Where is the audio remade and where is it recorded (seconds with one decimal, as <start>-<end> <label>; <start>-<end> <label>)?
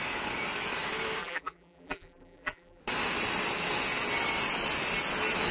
0.0-1.2 recorded; 1.2-2.8 remade; 2.8-5.5 recorded